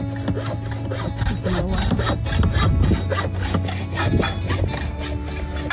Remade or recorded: recorded